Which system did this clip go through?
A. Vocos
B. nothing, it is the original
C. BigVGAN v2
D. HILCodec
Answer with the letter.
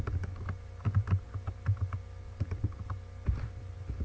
B